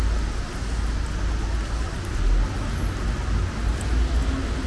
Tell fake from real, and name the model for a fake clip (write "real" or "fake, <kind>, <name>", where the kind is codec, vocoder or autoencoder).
real